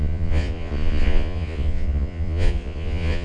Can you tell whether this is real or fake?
fake